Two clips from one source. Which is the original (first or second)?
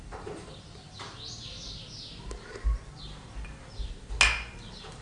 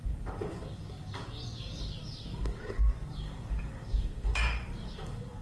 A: first